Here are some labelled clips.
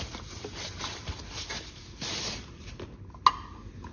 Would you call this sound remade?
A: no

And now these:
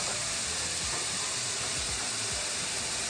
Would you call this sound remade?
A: no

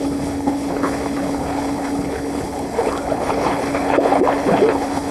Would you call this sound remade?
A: yes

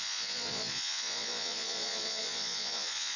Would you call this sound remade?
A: yes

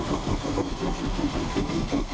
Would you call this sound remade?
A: yes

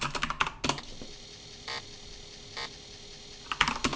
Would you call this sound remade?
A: no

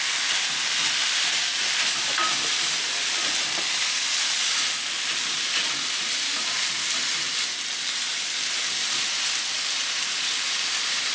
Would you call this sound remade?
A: no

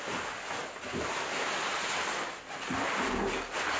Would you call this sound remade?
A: no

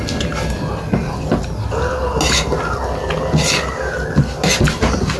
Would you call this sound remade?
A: no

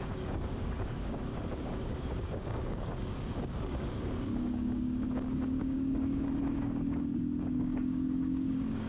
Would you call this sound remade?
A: yes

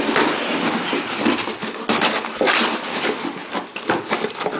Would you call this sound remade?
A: no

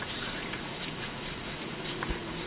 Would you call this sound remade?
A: yes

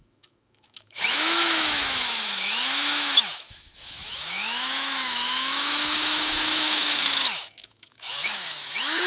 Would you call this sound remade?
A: yes